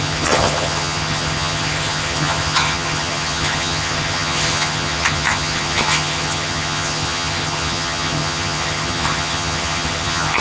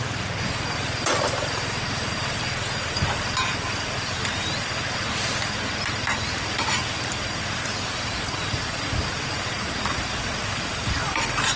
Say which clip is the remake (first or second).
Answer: first